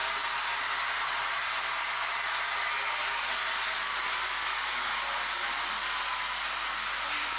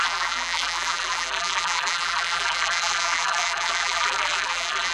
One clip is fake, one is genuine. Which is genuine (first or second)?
first